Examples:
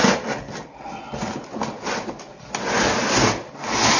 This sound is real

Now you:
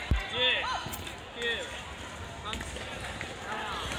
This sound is real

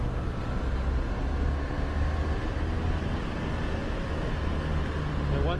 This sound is real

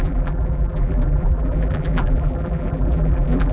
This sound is fake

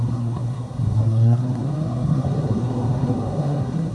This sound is fake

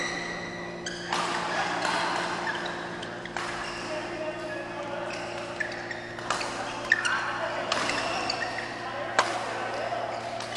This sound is real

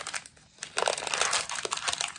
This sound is real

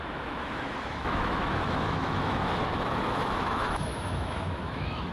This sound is fake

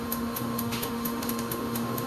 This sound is fake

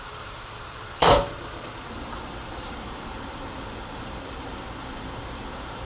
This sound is fake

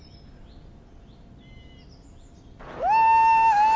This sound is real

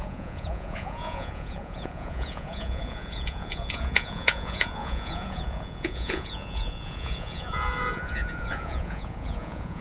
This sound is fake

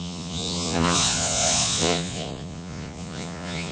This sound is fake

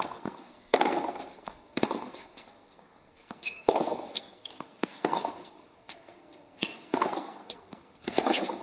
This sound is fake